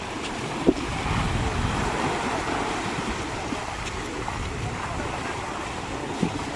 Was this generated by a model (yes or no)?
no